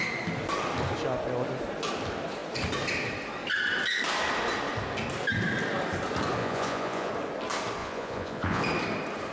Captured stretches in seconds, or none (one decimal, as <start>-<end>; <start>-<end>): 0.0-6.4; 7.1-7.8; 8.6-9.3